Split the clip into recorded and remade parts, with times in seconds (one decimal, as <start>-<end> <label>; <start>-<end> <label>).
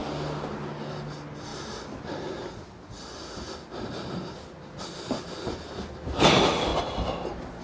0.0-7.6 recorded